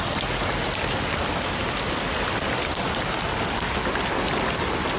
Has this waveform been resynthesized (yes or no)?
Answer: no